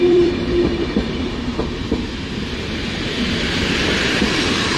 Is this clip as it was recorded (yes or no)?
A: no